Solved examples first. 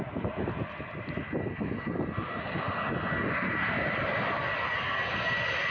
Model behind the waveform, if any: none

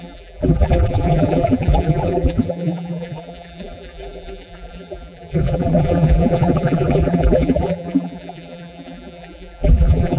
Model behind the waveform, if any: vocoder, BigVGAN v2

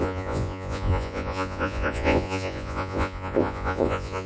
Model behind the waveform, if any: vocoder, Vocos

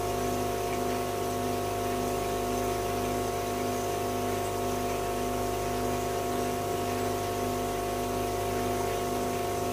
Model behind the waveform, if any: none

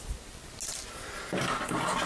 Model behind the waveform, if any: none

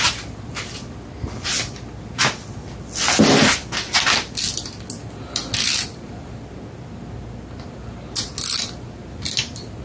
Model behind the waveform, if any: none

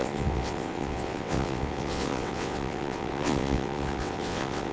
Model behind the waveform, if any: vocoder, WaveNeXt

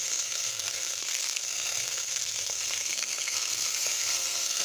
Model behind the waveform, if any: codec, SNAC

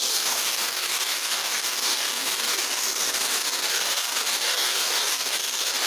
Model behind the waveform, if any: codec, DAC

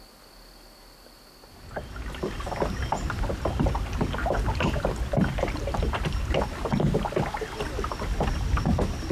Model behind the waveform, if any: none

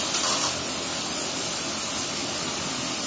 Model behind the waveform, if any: none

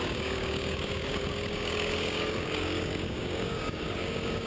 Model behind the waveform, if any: codec, DAC